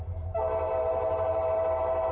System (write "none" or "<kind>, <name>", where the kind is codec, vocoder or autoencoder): vocoder, BigVGAN v2